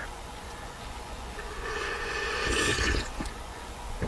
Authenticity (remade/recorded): remade